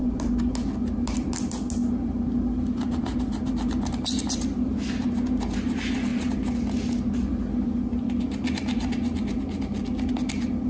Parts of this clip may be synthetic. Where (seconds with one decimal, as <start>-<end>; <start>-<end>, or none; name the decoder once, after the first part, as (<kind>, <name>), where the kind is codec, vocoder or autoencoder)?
none